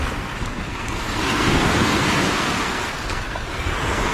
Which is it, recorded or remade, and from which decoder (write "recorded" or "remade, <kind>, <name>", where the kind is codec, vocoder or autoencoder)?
remade, codec, SNAC